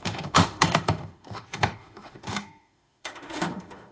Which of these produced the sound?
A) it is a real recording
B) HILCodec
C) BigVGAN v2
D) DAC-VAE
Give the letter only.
D